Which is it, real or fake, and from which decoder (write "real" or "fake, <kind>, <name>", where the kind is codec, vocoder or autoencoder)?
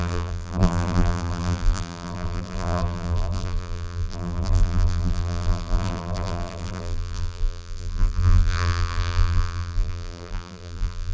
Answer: fake, vocoder, BigVGAN v2